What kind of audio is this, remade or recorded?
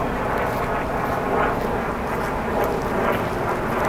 recorded